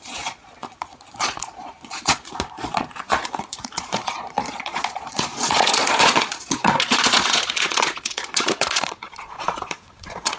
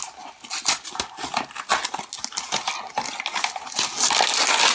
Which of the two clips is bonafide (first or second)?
second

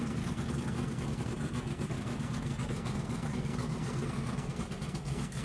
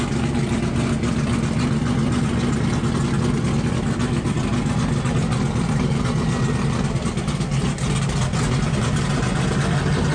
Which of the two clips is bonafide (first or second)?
second